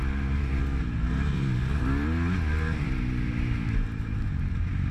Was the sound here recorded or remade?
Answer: recorded